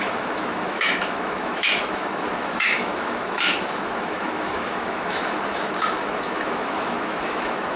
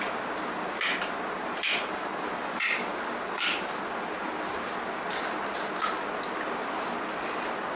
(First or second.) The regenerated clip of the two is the first